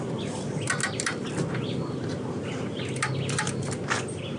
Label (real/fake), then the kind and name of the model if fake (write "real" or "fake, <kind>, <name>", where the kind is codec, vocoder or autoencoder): real